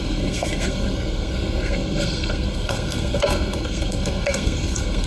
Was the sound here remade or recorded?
remade